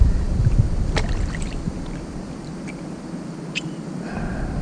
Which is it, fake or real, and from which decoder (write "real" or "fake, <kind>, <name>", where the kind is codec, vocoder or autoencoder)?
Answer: fake, vocoder, BigVGAN v2